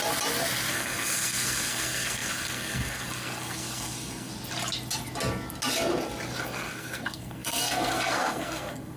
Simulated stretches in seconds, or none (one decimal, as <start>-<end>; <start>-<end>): 0.7-4.3; 6.4-9.0